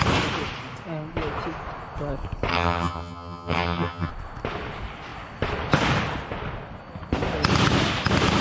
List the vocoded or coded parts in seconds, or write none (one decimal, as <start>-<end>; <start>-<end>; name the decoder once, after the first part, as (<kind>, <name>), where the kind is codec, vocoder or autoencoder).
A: 2.5-4.1 (vocoder, HiFi-GAN)